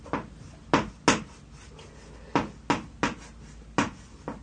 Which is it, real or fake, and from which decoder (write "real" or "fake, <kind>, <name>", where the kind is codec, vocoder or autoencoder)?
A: real